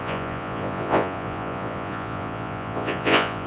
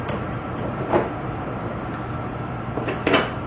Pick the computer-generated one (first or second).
first